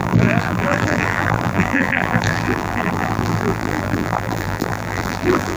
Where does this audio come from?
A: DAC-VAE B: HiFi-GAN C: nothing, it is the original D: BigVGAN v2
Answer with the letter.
D